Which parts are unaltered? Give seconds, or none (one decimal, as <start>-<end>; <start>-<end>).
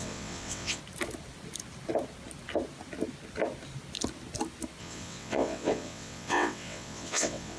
0.8-4.8